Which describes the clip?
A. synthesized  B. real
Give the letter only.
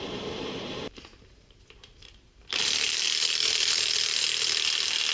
A